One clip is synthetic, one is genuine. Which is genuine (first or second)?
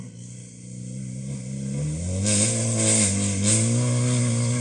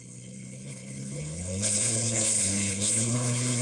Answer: first